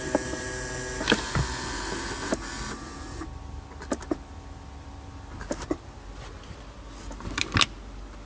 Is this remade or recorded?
recorded